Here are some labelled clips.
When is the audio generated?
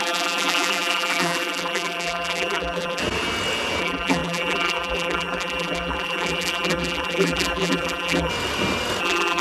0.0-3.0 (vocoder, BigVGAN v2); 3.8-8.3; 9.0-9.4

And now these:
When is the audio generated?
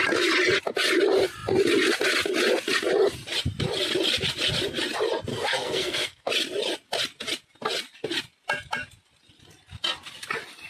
5.3-6.3 (codec, SNAC)